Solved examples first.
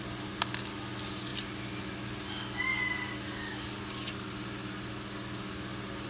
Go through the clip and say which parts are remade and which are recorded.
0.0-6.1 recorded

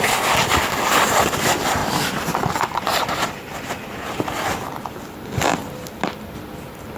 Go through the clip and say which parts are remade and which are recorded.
0.0-1.8 recorded; 1.8-3.6 remade; 3.6-7.0 recorded

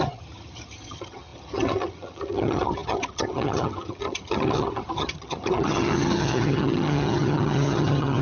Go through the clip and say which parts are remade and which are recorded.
0.0-8.2 remade

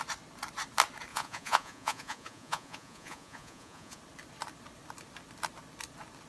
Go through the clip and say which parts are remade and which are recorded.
0.0-1.1 recorded; 1.1-4.0 remade; 4.0-6.3 recorded